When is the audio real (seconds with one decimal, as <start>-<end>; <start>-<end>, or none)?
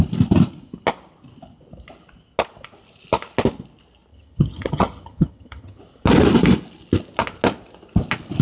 0.0-4.1; 5.8-8.4